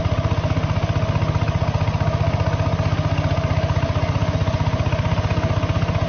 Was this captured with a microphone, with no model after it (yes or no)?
yes